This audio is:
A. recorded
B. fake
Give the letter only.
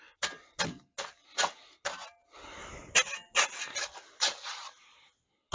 A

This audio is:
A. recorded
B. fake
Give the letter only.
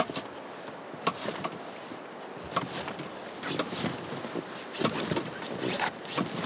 A